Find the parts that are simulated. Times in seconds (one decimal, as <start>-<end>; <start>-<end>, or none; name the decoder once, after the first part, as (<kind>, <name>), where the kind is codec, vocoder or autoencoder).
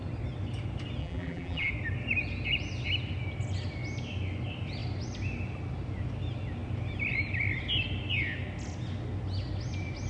1.0-1.7 (vocoder, BigVGAN v2)